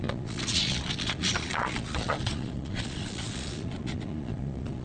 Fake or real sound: fake